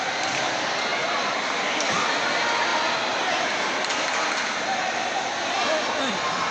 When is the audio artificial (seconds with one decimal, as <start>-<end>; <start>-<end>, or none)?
none